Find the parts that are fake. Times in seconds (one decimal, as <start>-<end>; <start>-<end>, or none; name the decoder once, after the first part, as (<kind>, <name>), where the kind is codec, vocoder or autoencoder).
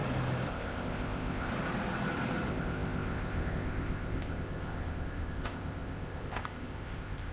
0.5-1.5 (codec, ZipCodec); 2.5-7.3